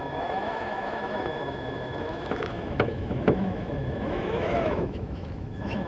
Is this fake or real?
fake